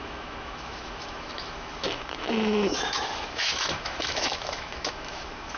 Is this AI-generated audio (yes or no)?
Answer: yes